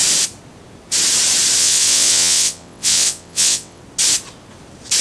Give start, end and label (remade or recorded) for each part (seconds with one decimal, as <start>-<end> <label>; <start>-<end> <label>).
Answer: 0.0-1.6 recorded; 1.6-3.8 remade; 3.8-5.0 recorded